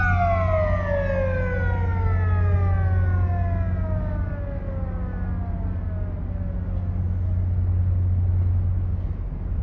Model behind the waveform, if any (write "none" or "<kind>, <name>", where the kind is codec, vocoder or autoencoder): none